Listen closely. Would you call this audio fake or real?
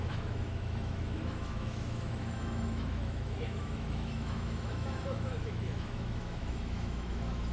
fake